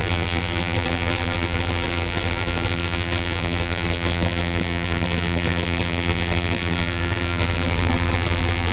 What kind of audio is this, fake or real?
fake